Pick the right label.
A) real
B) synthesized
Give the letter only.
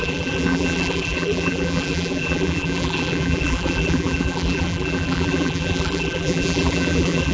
B